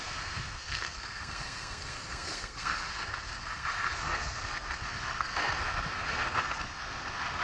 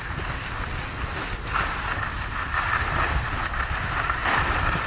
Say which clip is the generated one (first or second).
first